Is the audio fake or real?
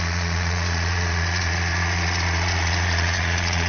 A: fake